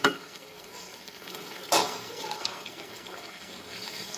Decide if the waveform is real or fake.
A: fake